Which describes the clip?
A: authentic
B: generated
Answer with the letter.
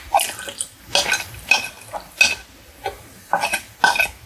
A